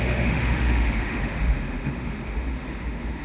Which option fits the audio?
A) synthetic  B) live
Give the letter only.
A